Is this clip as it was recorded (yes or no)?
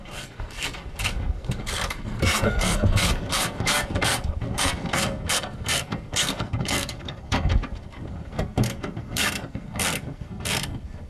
no